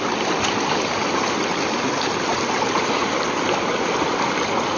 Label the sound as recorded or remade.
recorded